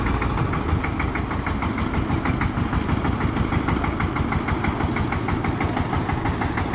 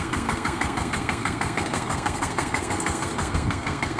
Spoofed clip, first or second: second